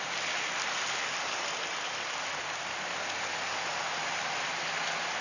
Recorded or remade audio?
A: recorded